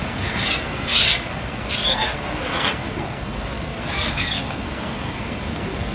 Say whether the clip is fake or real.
fake